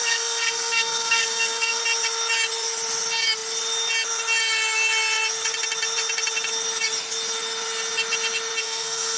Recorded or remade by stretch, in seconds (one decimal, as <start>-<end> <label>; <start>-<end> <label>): 0.0-1.8 remade; 1.8-8.6 recorded; 8.6-9.2 remade